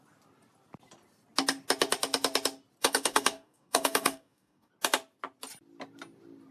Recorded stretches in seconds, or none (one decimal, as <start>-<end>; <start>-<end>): 0.0-2.8; 4.7-6.5